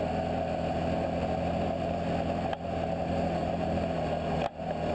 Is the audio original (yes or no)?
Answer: yes